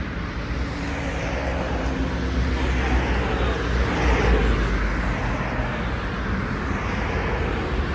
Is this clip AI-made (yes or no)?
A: no